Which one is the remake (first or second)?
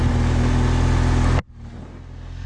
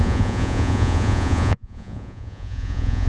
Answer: second